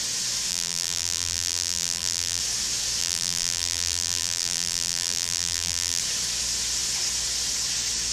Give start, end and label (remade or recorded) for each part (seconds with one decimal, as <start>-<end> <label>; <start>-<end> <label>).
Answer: 0.0-0.5 recorded; 0.5-2.4 remade; 2.4-3.0 recorded; 3.0-6.0 remade; 6.0-8.1 recorded

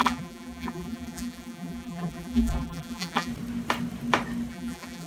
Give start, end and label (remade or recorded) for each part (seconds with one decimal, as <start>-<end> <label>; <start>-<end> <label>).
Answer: 0.0-3.3 remade; 3.3-4.5 recorded; 4.5-5.1 remade

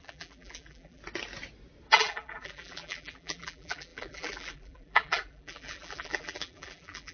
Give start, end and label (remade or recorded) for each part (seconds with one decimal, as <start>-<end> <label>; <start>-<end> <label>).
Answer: 0.0-1.0 remade; 1.0-1.9 recorded; 1.9-7.1 remade

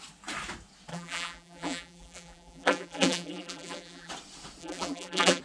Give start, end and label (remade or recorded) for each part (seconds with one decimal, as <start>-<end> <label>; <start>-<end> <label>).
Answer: 0.0-0.9 recorded; 0.9-4.1 remade; 4.1-4.6 recorded; 4.6-5.4 remade